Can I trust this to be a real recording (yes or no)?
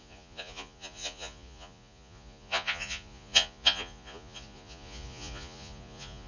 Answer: no